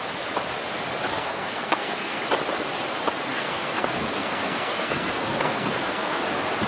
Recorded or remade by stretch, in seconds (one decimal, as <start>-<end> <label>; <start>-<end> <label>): 0.0-1.1 recorded; 1.1-2.2 remade; 2.2-3.3 recorded; 3.3-6.2 remade; 6.2-6.7 recorded